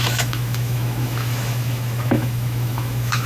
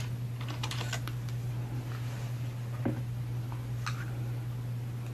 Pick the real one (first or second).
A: second